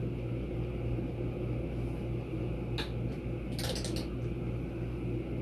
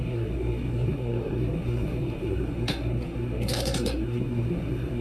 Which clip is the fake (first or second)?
second